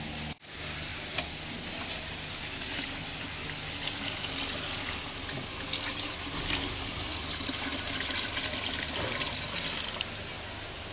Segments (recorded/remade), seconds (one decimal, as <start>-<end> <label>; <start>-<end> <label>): 0.0-10.9 recorded